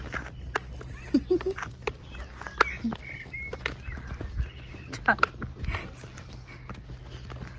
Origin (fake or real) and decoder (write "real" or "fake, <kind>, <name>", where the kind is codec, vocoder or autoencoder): real